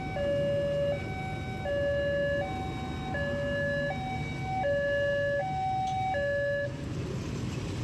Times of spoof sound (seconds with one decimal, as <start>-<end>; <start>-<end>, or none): none